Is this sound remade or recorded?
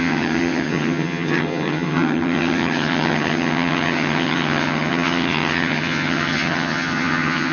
remade